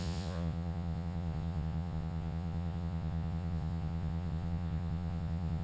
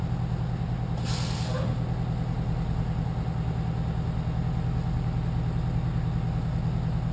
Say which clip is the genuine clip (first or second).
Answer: second